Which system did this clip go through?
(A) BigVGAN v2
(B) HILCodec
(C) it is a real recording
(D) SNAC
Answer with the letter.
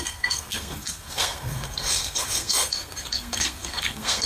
D